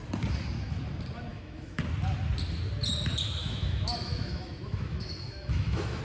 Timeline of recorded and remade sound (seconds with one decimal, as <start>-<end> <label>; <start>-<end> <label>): 0.0-1.3 recorded; 1.3-1.8 remade; 1.8-3.4 recorded; 3.4-6.0 remade